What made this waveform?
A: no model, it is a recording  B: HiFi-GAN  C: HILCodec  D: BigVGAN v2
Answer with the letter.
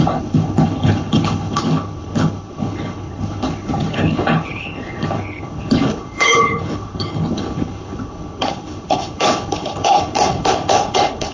C